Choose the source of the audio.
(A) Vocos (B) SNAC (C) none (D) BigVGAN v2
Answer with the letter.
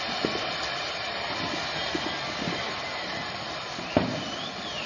C